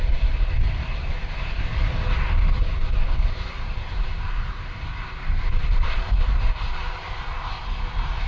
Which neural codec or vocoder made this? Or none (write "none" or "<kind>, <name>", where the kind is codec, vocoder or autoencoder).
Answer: none